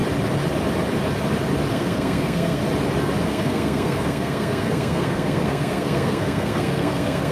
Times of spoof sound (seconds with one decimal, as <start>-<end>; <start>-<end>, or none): 1.7-2.6; 3.2-7.3

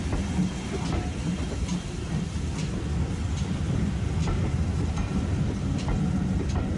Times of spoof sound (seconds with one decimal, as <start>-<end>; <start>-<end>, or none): 1.7-5.8

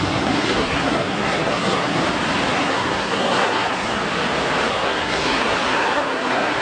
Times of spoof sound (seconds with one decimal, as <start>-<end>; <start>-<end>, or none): 0.0-2.0; 2.5-4.0; 4.7-6.6